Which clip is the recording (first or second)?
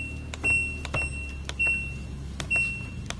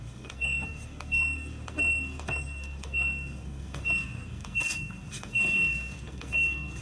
first